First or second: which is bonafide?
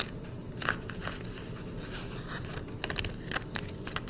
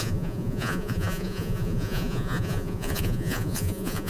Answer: first